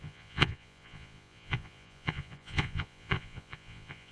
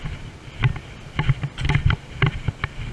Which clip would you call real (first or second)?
second